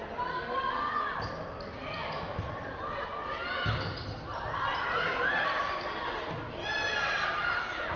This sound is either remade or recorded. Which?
recorded